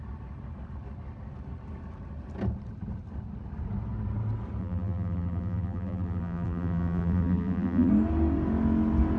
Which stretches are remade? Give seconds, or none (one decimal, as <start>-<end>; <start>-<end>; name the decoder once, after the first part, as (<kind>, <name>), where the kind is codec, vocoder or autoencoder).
4.6-7.9 (vocoder, BigVGAN v2)